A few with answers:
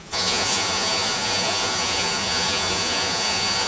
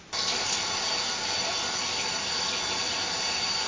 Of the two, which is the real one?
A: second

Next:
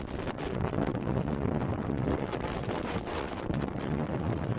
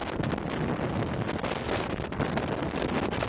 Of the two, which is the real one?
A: second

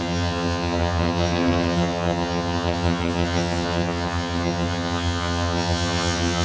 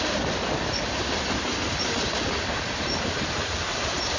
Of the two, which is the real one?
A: second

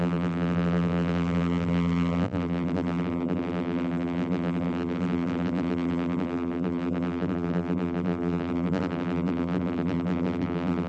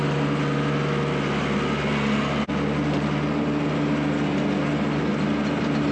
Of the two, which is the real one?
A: second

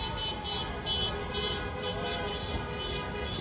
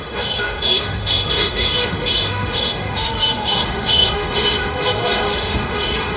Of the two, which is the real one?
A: first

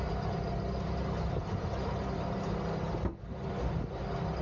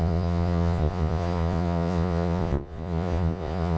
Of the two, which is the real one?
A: first